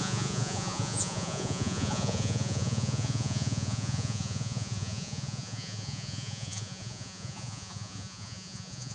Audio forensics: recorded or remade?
remade